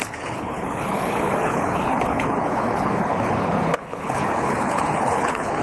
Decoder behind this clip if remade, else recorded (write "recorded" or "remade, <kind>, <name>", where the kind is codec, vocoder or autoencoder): remade, codec, HILCodec